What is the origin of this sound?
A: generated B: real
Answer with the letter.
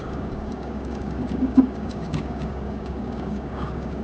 A